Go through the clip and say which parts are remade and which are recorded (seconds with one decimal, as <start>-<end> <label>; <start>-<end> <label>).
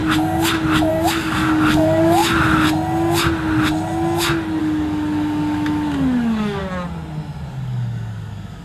0.0-0.9 recorded; 0.9-2.2 remade; 2.2-4.6 recorded; 4.6-6.6 remade; 6.6-7.5 recorded; 7.5-8.6 remade